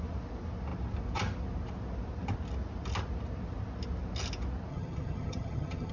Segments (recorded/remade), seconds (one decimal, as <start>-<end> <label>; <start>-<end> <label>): 0.0-4.7 recorded; 4.7-5.9 remade